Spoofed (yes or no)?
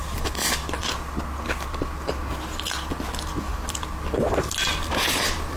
no